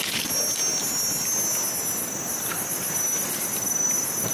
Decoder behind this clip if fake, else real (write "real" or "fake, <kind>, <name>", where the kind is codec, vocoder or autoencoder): real